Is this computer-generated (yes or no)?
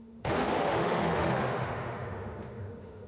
yes